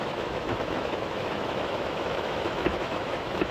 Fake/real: fake